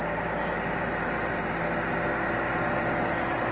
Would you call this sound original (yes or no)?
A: yes